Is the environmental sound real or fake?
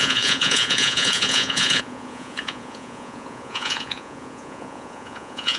fake